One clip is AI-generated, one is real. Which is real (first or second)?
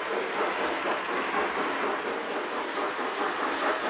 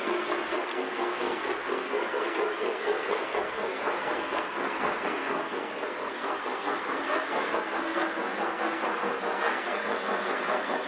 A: first